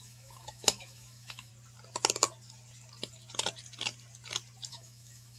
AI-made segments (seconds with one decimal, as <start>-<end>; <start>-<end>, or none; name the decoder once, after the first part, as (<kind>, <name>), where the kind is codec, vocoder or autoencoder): 0.0-1.5 (autoencoder, DAC-VAE); 4.7-5.4